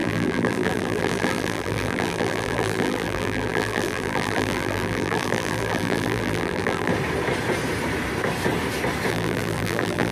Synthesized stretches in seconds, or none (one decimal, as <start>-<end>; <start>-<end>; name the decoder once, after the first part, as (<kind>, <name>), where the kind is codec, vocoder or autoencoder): 0.0-6.9 (vocoder, BigVGAN v2); 9.1-10.1